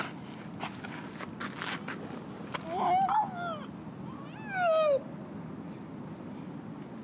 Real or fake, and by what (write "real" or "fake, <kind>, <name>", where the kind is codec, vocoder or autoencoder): real